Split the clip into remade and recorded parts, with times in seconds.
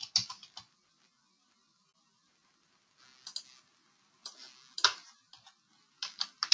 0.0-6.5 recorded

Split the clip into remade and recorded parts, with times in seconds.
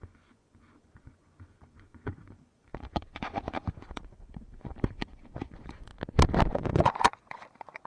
0.0-5.9 remade; 5.9-6.5 recorded; 6.5-7.9 remade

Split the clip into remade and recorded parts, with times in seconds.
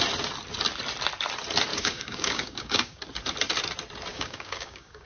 0.0-1.7 recorded; 1.7-3.0 remade; 3.0-4.1 recorded; 4.1-5.1 remade